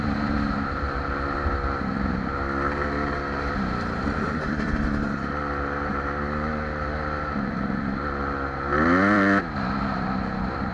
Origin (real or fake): fake